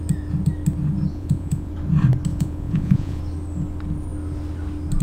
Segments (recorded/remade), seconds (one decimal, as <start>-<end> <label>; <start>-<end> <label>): 0.0-1.1 recorded; 1.1-1.7 remade; 1.7-2.3 recorded; 2.3-3.2 remade; 3.2-5.0 recorded